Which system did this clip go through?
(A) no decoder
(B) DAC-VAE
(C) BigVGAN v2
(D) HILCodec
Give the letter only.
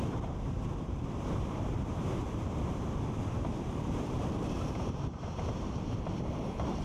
C